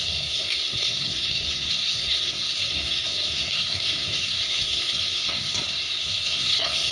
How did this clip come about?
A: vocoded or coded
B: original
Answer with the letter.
A